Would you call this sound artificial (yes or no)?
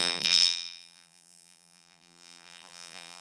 yes